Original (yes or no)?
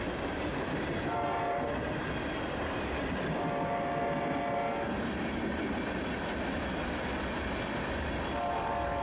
yes